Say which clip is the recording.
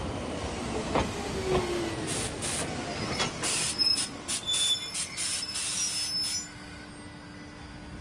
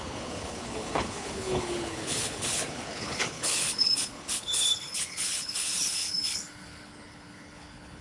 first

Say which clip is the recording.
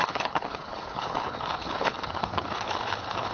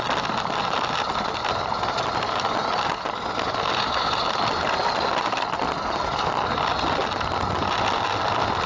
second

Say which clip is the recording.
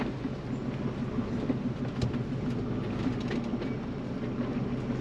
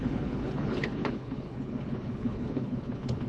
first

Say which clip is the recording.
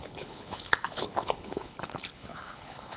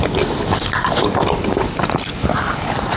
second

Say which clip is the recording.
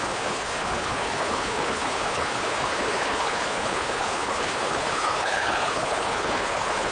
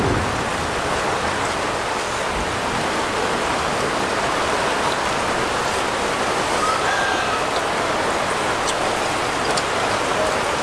second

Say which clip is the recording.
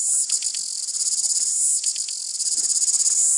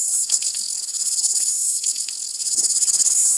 first